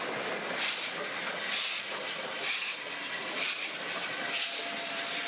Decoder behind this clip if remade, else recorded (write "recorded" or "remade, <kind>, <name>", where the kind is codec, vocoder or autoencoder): recorded